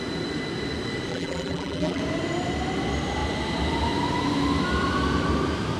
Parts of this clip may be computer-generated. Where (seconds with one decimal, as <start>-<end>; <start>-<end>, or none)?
1.1-2.0